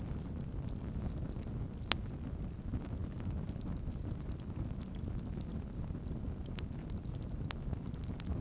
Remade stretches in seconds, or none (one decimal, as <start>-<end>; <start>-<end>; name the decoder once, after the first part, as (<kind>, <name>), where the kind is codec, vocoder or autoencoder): none